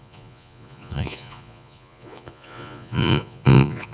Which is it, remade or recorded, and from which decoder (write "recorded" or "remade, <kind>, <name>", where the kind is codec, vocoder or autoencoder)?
remade, vocoder, Vocos